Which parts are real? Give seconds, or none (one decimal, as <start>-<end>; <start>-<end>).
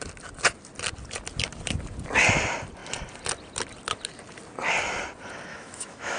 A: 0.0-5.5